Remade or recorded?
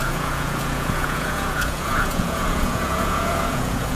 remade